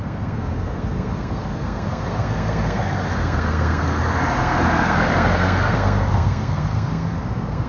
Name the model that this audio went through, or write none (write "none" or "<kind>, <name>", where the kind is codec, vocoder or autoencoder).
codec, SNAC